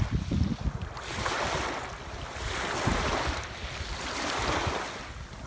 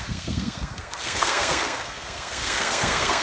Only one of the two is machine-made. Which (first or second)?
second